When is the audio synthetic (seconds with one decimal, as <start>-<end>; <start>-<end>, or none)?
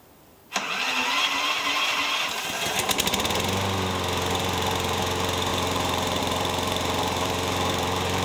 0.0-0.4; 4.4-8.2